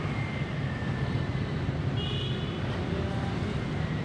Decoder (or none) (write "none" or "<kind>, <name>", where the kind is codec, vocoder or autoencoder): none